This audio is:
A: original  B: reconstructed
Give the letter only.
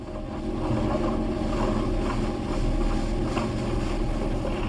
A